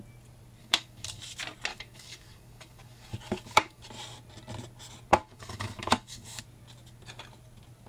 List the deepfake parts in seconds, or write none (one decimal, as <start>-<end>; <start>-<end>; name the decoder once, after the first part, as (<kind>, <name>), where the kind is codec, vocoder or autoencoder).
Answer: 0.6-1.2 (codec, DAC); 1.7-3.9; 5.1-6.4